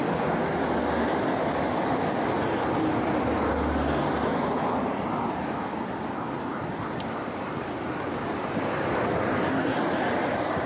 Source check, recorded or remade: recorded